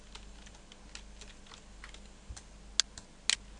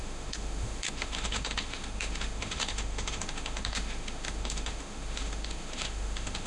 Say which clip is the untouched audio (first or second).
first